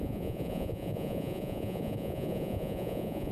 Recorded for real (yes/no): no